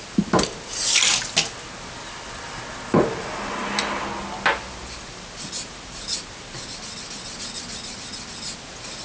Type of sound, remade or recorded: recorded